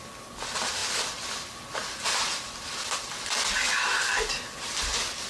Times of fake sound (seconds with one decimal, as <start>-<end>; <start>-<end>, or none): none